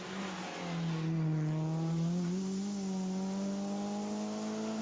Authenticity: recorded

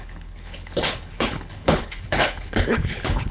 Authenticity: remade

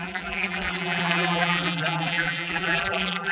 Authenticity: remade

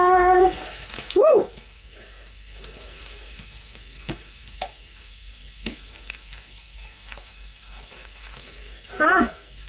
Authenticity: remade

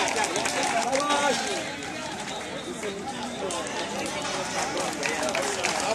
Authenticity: recorded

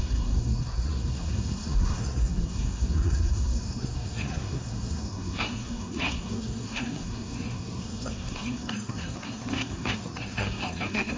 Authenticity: remade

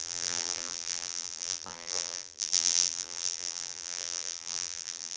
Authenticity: remade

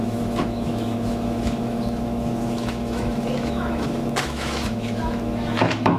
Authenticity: remade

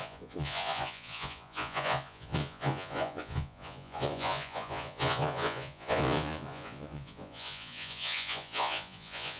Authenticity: remade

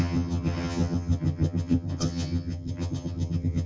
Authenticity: remade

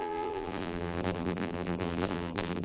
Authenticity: remade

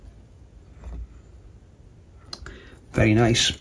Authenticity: recorded